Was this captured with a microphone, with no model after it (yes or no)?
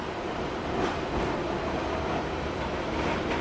no